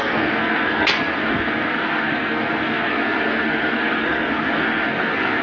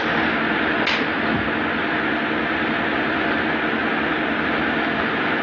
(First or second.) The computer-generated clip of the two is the first